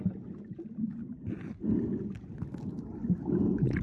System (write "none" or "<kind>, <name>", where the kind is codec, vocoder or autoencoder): none